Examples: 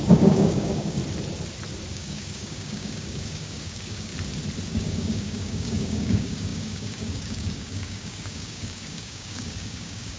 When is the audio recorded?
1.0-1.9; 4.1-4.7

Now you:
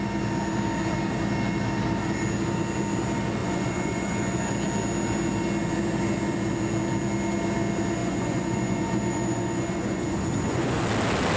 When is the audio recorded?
0.0-3.4; 4.5-8.0; 10.8-11.4

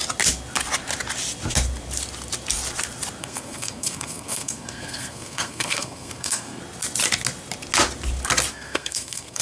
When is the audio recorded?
0.0-3.2; 6.6-8.5

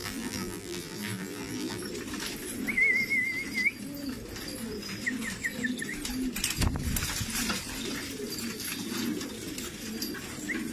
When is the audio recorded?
1.8-10.7

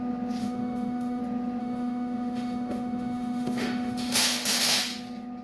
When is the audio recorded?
0.0-0.4; 1.2-1.6; 4.8-5.4